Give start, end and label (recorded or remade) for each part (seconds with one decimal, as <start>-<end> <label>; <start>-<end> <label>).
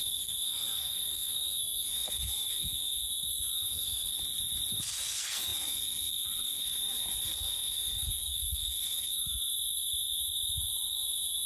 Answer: 0.0-4.1 remade; 4.1-4.7 recorded; 4.7-9.4 remade; 9.4-10.9 recorded; 10.9-11.5 remade